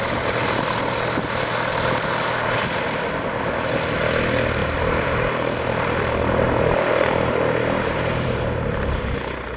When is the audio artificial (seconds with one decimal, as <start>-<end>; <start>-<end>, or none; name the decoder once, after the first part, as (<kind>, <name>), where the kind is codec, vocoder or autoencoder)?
4.6-9.2 (vocoder, BigVGAN v2)

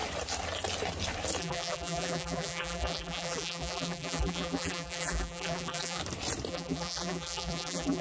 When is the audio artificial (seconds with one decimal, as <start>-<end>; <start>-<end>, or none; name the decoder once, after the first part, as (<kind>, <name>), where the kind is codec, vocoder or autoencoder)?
1.4-6.0 (vocoder, BigVGAN v2); 6.5-8.0

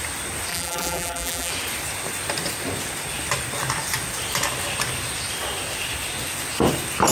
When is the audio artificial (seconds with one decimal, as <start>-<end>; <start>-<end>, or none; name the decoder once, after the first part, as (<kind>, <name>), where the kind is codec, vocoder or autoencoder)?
0.5-1.5 (vocoder, BigVGAN v2)

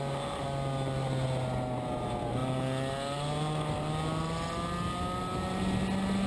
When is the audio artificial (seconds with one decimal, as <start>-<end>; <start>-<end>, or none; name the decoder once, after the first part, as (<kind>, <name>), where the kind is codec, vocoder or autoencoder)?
none

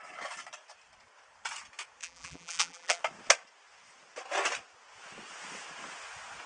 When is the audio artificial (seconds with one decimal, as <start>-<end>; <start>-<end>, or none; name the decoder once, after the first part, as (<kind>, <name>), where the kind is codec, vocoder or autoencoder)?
2.0-3.0 (vocoder, BigVGAN v2)

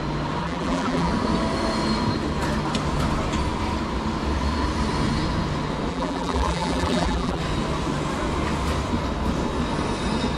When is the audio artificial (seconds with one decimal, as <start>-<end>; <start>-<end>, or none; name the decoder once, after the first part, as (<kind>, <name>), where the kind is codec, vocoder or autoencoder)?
0.4-1.1 (vocoder, BigVGAN v2); 5.9-7.4